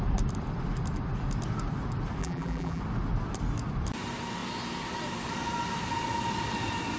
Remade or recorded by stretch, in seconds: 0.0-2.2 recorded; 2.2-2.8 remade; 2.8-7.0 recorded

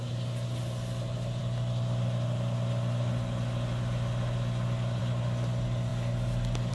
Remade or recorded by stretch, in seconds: 0.0-6.7 recorded

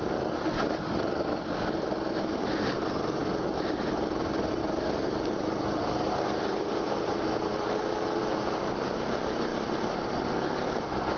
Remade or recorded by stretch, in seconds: 0.0-11.2 recorded

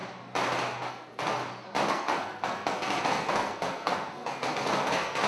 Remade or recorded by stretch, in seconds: 0.0-0.9 recorded; 0.9-1.4 remade; 1.4-1.9 recorded; 1.9-5.3 remade

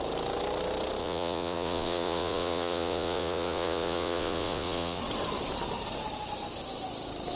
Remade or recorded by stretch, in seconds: 0.0-1.0 recorded; 1.0-5.0 remade; 5.0-7.4 recorded

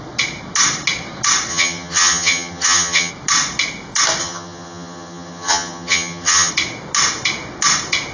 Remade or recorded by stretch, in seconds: 0.0-1.5 recorded; 1.5-3.1 remade; 3.1-4.2 recorded; 4.2-6.5 remade; 6.5-8.1 recorded

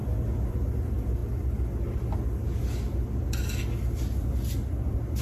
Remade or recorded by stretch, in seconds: 0.0-5.2 recorded